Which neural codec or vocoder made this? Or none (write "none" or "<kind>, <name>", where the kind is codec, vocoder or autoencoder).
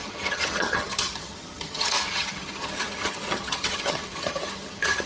vocoder, HiFi-GAN